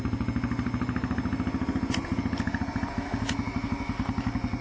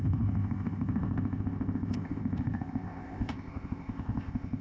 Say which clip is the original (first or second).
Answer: first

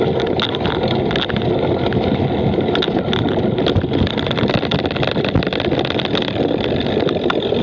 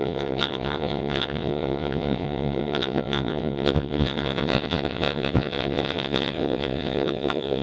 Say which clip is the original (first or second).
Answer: first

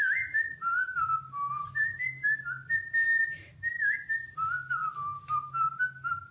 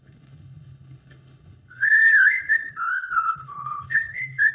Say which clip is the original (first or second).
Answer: first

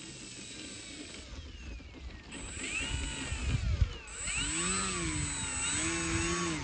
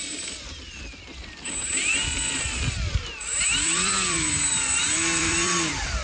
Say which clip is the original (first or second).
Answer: first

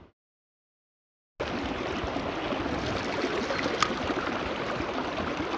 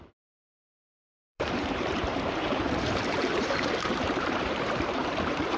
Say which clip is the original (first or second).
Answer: first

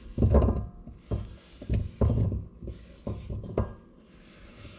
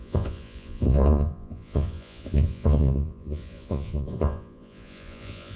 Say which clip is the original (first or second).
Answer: first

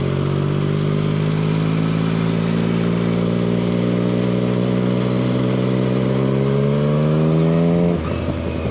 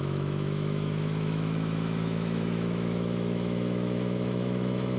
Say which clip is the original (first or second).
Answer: first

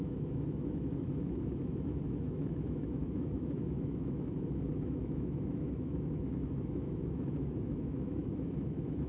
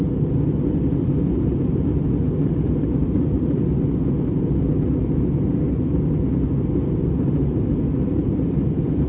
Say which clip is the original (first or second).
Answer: second